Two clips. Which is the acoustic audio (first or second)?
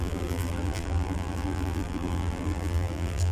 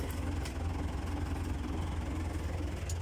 second